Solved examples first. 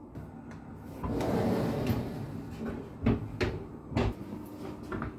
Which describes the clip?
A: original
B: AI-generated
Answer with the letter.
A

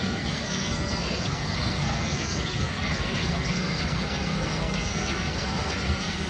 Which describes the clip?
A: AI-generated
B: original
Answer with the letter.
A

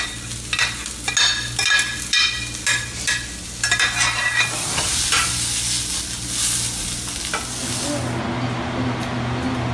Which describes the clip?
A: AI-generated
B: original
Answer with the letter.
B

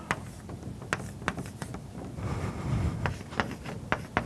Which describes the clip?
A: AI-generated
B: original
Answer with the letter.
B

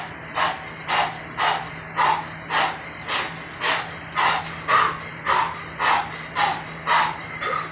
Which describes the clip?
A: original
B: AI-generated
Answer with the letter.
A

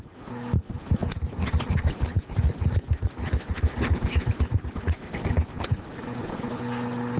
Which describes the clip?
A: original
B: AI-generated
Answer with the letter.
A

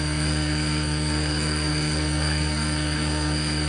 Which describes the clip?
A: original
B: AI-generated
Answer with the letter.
B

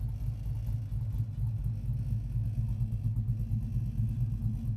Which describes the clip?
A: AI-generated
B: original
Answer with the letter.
B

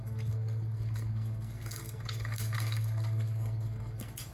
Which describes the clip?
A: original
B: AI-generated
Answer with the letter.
B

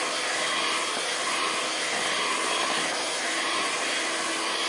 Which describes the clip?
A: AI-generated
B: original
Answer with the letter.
B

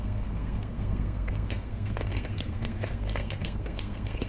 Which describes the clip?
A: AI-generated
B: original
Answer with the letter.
A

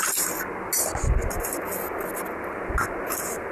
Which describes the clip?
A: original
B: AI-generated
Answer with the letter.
A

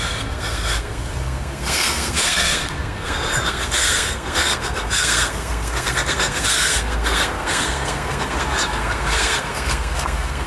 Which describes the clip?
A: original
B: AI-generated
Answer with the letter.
B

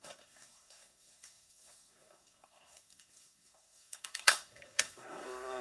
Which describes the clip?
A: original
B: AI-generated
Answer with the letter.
B